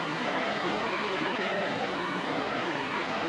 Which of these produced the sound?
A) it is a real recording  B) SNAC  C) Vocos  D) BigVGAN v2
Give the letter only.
B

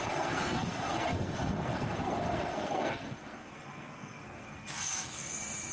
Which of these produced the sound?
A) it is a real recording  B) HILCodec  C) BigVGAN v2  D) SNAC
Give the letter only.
D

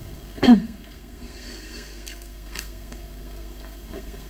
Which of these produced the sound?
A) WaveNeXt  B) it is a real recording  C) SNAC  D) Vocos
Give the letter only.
C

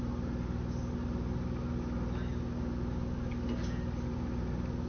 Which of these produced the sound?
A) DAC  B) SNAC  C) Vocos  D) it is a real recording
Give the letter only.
D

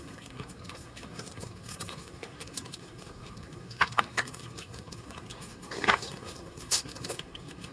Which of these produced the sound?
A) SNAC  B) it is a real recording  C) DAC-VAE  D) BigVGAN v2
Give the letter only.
A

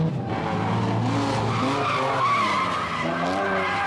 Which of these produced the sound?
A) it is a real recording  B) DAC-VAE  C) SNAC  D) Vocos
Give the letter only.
A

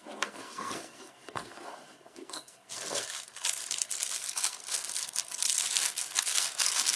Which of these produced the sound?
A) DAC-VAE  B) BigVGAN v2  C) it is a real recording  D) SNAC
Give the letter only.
D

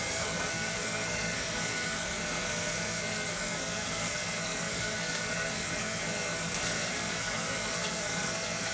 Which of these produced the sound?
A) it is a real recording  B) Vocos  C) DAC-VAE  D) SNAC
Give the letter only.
D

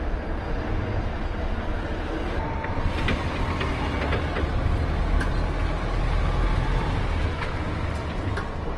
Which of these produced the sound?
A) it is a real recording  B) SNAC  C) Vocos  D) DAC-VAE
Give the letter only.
A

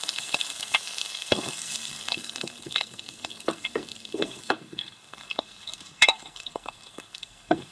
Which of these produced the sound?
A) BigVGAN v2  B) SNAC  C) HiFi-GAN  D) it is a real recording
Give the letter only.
B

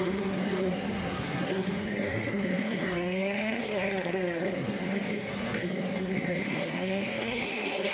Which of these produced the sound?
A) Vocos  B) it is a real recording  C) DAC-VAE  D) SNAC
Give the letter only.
D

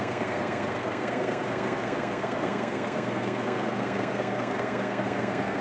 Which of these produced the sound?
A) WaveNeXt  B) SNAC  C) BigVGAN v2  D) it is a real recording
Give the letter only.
B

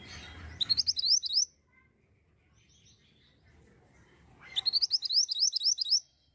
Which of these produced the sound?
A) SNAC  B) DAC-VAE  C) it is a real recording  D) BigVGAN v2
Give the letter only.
C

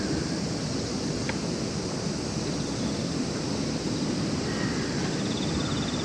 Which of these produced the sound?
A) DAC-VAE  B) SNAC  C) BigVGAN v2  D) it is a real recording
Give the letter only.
D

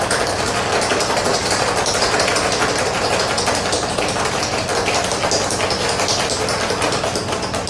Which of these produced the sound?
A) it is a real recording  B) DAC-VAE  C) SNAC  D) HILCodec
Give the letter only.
A